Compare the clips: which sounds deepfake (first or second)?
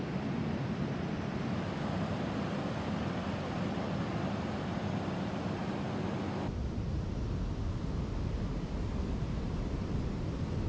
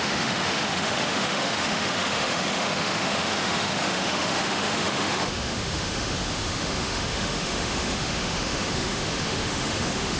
second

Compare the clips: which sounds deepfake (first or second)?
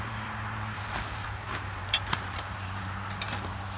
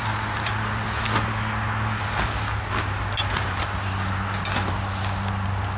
first